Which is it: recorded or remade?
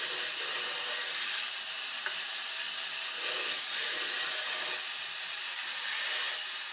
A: recorded